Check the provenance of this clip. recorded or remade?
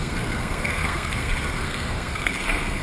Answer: remade